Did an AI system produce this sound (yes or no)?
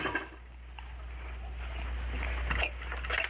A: no